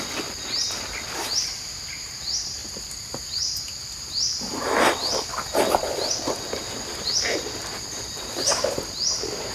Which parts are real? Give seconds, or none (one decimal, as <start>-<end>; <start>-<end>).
0.0-9.5